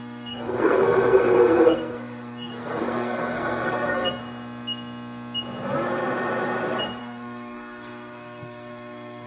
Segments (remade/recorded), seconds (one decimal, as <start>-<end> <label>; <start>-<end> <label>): 0.0-4.2 remade; 4.2-7.0 recorded; 7.0-9.3 remade